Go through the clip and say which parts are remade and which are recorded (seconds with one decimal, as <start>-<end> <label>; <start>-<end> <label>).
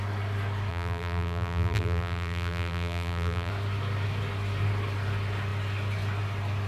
0.0-0.7 recorded; 0.7-3.5 remade; 3.5-6.7 recorded